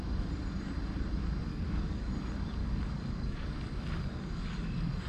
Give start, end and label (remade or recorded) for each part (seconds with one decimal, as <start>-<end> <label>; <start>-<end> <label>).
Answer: 0.0-1.5 recorded; 1.5-2.1 remade; 2.1-2.6 recorded; 2.6-5.1 remade